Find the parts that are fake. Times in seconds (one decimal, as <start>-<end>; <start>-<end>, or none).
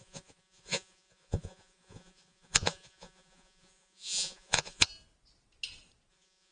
0.0-4.9; 6.1-6.5